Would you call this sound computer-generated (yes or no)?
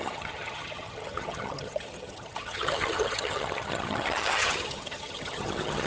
yes